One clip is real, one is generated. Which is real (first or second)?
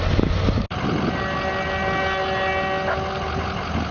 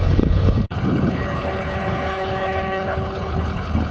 first